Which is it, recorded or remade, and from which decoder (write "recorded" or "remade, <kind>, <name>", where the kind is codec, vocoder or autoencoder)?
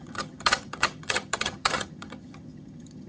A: remade, vocoder, HiFi-GAN